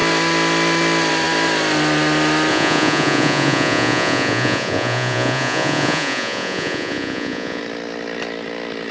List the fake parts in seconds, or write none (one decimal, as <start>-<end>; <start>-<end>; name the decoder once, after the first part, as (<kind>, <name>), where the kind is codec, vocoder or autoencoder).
2.5-7.6 (vocoder, Vocos)